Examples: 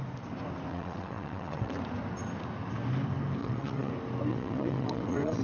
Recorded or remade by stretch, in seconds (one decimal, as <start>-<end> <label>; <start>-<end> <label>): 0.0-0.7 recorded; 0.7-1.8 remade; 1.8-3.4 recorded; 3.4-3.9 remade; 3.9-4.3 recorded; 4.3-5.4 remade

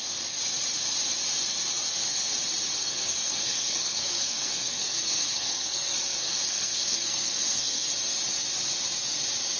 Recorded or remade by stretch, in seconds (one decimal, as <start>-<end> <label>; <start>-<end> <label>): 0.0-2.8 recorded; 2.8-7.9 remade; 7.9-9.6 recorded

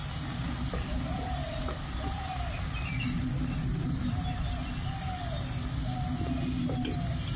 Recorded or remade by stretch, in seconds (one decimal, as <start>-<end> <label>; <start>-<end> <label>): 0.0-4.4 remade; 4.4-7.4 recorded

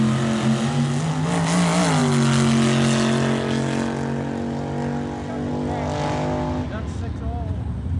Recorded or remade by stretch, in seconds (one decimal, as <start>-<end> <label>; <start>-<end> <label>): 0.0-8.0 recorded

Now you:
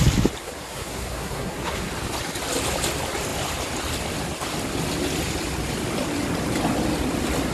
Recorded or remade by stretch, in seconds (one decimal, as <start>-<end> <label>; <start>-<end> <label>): 0.0-0.4 recorded; 0.4-1.9 remade; 1.9-7.5 recorded

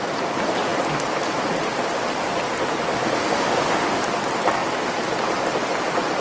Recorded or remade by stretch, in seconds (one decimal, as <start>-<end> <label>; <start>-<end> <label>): 0.0-3.2 recorded; 3.2-4.0 remade; 4.0-6.2 recorded

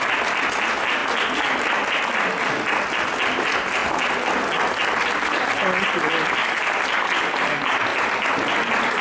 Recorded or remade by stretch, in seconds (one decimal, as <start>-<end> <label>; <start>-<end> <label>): 0.0-9.0 recorded

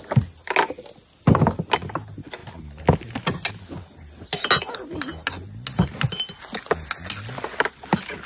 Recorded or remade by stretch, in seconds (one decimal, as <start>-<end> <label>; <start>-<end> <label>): 0.0-8.3 recorded